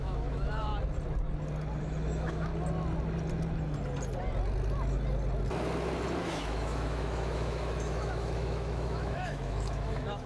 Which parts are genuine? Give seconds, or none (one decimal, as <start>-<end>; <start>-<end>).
0.7-1.8; 2.5-6.2